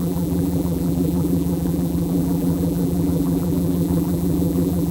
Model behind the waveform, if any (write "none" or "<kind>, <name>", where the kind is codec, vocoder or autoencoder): vocoder, BigVGAN v2